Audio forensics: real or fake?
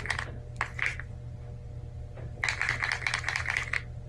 real